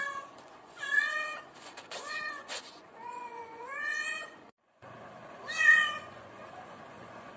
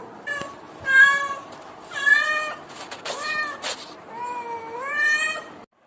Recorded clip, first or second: second